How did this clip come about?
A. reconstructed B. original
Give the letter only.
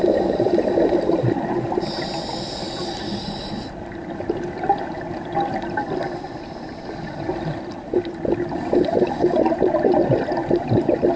B